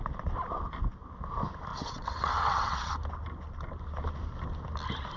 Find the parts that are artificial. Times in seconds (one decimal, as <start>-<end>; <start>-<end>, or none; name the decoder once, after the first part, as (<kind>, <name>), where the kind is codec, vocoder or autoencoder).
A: 1.7-2.9 (vocoder, WaveNeXt)